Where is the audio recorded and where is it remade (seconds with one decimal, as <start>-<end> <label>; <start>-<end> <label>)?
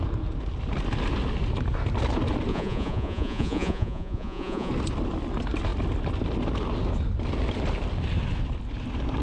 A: 0.0-2.5 recorded; 2.5-4.7 remade; 4.7-9.2 recorded